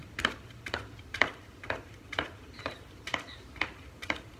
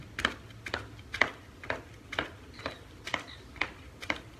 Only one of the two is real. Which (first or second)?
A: second